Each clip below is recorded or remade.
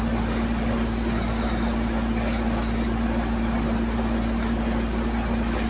recorded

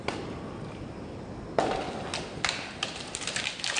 recorded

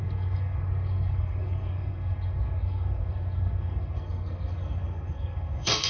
remade